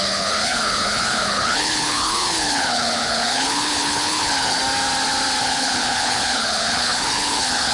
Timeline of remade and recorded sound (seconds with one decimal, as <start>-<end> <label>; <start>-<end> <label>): 0.0-4.6 remade; 4.6-5.4 recorded; 5.4-7.7 remade